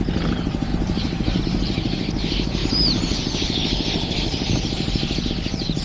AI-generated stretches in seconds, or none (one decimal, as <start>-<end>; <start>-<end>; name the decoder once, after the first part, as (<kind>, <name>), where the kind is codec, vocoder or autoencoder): none